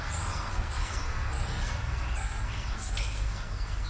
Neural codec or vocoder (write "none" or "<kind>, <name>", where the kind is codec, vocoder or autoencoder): codec, SNAC